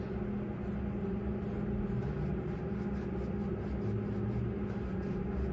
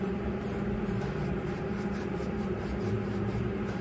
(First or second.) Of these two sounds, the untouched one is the first